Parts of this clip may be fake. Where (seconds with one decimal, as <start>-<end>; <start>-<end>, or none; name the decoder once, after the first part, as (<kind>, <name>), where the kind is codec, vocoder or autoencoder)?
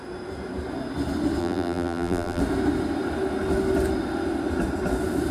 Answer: 1.4-2.4 (vocoder, BigVGAN v2)